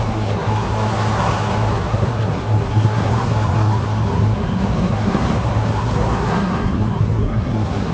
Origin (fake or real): fake